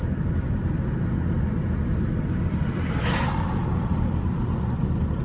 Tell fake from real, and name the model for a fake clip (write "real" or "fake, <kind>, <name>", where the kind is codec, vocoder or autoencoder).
fake, vocoder, BigVGAN v2